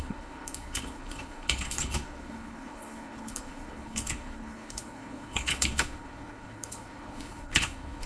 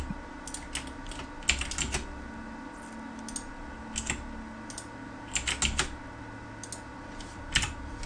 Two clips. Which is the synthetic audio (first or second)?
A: first